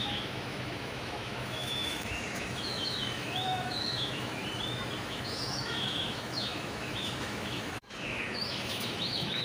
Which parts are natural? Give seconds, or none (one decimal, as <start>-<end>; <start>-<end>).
4.4-5.0